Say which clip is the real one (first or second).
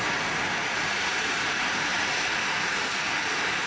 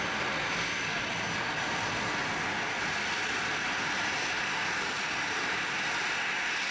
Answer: second